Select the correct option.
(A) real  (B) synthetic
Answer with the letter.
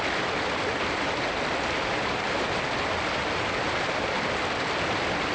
A